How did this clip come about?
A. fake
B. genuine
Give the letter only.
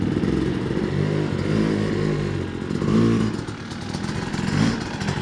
B